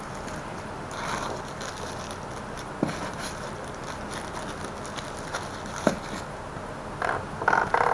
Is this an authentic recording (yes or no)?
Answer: yes